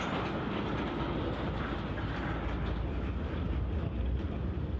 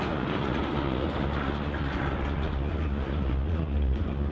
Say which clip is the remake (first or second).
second